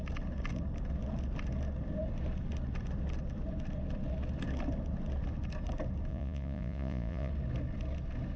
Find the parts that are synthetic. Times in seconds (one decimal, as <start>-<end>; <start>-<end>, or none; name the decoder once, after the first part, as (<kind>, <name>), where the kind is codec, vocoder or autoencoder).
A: 6.1-7.3 (vocoder, Vocos)